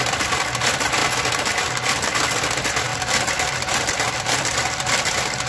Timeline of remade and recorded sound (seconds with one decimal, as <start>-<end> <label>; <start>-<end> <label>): 0.0-2.9 recorded; 2.9-4.2 remade; 4.2-5.5 recorded